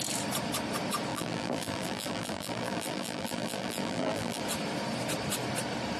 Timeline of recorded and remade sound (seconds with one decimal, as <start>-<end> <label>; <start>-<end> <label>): 0.0-1.1 recorded; 1.1-4.4 remade; 4.4-6.0 recorded